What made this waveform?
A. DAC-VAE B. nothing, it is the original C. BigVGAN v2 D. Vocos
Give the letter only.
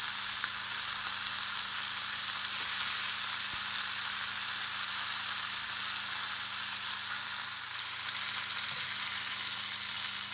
B